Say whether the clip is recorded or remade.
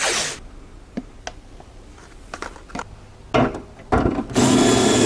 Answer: recorded